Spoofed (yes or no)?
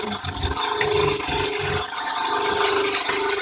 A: no